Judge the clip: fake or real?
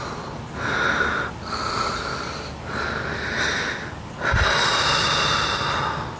real